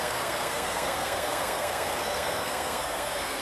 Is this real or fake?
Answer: fake